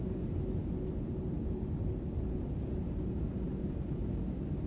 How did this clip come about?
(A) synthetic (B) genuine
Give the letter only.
B